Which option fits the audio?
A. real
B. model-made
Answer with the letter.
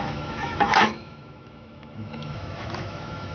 B